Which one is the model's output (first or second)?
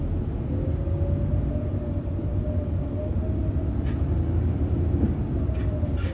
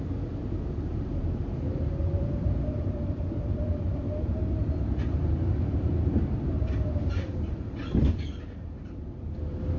second